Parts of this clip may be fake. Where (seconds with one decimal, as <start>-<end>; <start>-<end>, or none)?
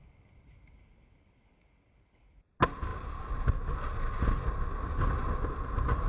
none